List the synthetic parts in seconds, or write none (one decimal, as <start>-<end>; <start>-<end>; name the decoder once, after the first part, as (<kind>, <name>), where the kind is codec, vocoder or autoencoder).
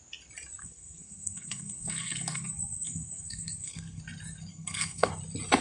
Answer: 0.6-4.0 (codec, SNAC); 4.5-5.1